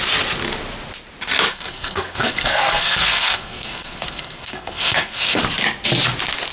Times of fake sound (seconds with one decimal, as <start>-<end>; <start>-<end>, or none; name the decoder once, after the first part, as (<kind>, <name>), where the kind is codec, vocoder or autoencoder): 1.5-5.4 (codec, SNAC)